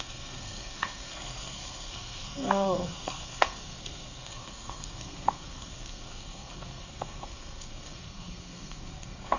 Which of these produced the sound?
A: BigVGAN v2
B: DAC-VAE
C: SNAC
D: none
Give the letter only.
C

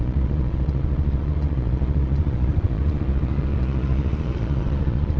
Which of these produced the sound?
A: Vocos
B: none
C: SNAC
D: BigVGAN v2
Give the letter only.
A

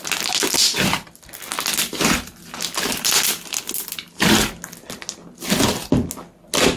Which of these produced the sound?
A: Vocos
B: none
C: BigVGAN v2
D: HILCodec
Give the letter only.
B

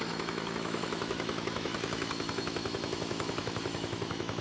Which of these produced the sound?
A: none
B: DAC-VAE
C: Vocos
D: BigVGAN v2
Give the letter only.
B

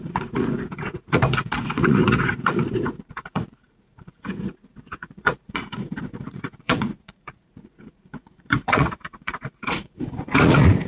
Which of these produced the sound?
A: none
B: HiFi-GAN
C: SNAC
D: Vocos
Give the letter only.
D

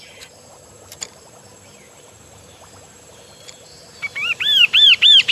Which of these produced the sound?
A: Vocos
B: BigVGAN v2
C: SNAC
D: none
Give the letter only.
B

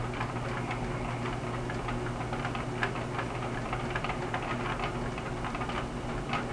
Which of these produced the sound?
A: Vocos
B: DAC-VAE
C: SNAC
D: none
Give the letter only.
D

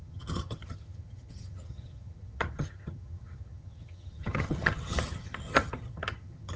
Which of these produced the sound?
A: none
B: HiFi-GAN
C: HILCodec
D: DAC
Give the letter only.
B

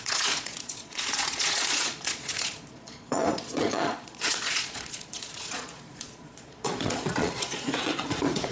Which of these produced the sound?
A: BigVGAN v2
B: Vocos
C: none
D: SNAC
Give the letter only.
B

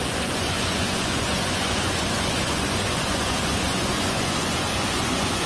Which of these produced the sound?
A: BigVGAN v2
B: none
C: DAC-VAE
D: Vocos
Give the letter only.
D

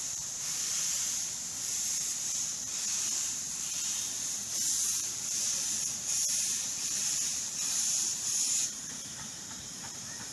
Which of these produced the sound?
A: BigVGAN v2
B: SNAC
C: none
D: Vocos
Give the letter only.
A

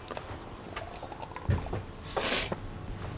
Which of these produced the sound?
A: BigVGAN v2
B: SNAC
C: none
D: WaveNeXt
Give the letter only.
C